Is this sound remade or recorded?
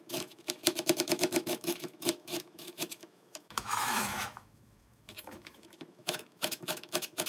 remade